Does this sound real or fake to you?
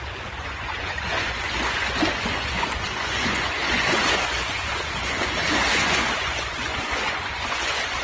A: fake